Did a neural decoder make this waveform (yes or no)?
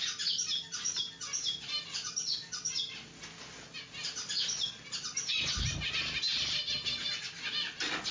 no